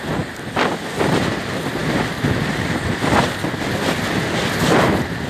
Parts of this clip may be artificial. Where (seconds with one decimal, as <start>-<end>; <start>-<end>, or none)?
none